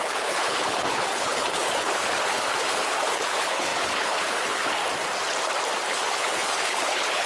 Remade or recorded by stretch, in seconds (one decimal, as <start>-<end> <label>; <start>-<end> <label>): 0.0-4.8 remade; 4.8-5.9 recorded; 5.9-7.3 remade